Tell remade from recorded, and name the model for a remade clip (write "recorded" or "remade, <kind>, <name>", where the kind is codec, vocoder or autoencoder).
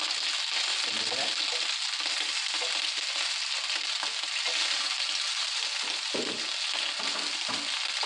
recorded